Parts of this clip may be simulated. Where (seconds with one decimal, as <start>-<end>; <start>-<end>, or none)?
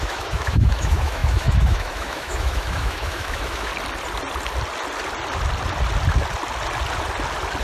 0.0-3.7